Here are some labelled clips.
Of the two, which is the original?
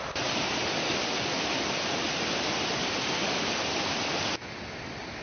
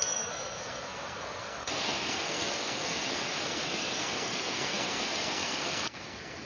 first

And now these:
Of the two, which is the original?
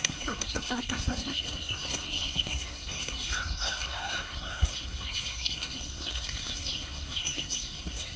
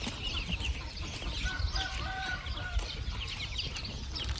second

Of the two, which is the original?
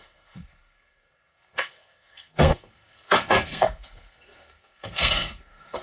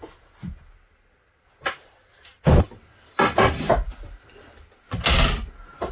second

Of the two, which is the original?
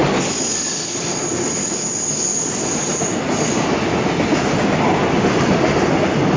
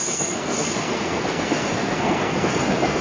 first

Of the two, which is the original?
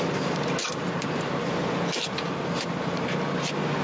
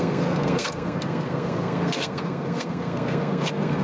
first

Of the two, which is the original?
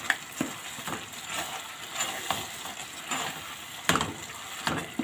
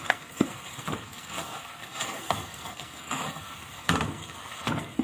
first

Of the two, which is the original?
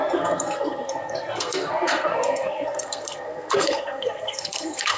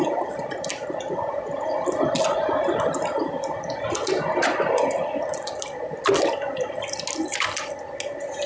second